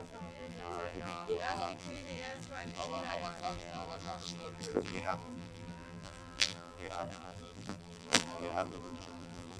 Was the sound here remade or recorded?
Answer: remade